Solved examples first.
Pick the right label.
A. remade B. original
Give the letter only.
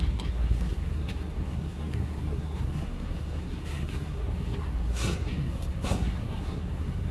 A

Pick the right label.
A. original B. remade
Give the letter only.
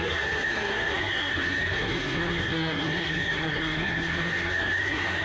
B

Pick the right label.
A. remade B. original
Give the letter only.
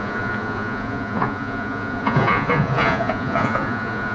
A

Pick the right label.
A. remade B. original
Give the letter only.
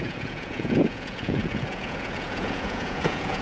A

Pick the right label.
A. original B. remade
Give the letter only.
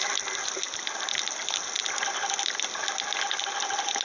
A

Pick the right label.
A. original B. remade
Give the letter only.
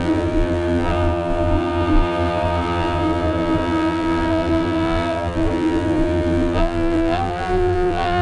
B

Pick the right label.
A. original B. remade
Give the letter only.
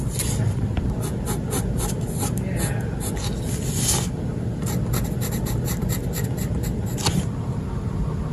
A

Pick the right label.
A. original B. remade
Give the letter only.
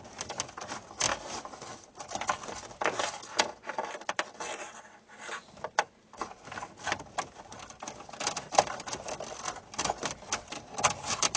A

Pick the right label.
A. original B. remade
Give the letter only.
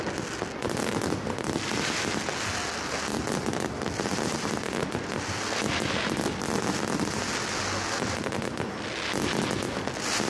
A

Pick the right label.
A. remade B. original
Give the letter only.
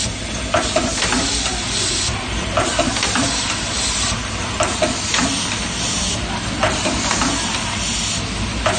B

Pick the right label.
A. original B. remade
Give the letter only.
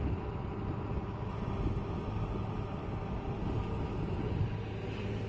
A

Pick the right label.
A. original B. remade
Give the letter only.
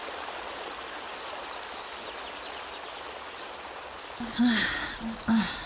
A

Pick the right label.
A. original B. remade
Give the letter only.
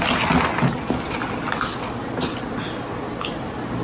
A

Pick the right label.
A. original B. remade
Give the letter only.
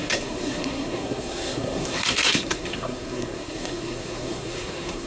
B